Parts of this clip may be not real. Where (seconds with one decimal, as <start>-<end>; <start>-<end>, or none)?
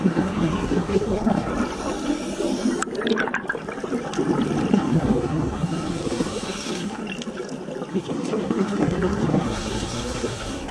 0.0-1.5; 4.7-7.0; 7.9-10.7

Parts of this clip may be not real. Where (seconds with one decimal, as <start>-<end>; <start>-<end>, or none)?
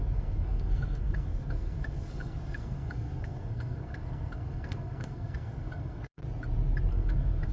0.0-6.2; 6.9-7.5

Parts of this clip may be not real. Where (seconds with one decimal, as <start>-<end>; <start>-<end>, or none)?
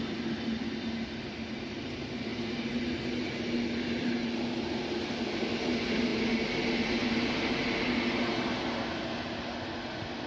none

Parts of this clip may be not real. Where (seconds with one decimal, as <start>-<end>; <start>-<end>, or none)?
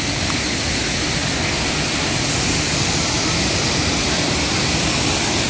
none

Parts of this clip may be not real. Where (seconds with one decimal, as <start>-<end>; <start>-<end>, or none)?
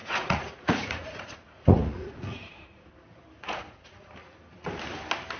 0.0-2.9; 3.4-4.1